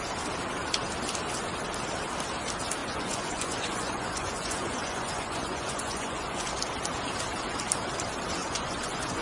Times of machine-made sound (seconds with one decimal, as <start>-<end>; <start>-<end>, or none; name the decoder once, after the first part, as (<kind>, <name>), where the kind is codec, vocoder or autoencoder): 2.8-6.5 (vocoder, Vocos); 8.4-9.2